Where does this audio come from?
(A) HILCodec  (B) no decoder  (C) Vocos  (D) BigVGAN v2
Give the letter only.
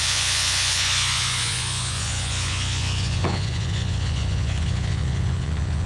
C